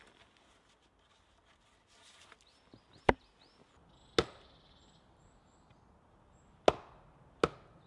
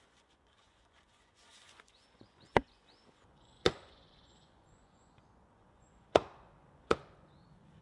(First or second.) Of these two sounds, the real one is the first